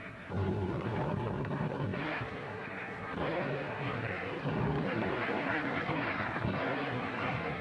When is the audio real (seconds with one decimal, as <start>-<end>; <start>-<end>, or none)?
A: none